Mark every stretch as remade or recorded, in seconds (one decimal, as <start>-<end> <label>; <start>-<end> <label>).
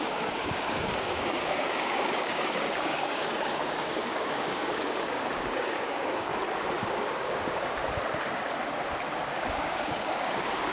0.0-6.3 remade; 6.3-6.9 recorded; 6.9-7.8 remade; 7.8-9.5 recorded; 9.5-10.7 remade